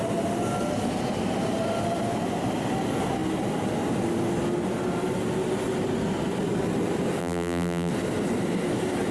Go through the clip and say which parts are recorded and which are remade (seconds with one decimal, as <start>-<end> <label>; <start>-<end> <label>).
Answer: 0.0-7.2 recorded; 7.2-7.9 remade; 7.9-9.1 recorded